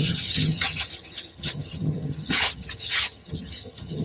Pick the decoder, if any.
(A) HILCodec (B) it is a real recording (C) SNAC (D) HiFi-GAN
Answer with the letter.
D